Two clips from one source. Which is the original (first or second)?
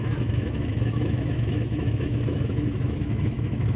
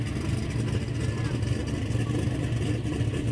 second